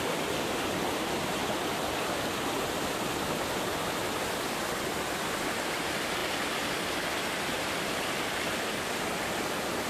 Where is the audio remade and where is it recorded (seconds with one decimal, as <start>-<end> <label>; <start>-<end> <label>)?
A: 0.0-9.9 recorded